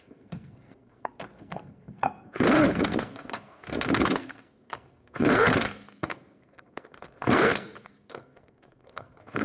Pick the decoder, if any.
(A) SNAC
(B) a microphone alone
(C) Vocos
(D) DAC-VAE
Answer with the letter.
A